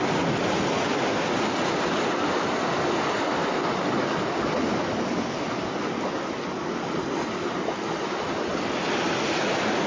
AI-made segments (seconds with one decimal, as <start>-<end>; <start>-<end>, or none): none